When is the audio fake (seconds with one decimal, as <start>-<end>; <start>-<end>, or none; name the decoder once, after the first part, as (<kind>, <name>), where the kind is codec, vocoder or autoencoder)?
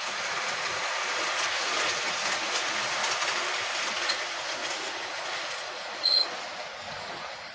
0.0-3.0 (vocoder, Vocos); 3.9-7.5